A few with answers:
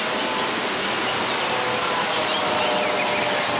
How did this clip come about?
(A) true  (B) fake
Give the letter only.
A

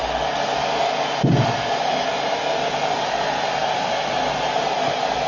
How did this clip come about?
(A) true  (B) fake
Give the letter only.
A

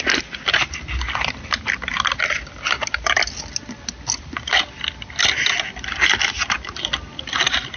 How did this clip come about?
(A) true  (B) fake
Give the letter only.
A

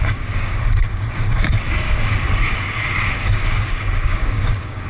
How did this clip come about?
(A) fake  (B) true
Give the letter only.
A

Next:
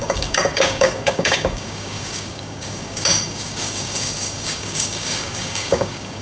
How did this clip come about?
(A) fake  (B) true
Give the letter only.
A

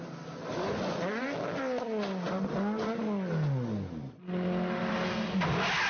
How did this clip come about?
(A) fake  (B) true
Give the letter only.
B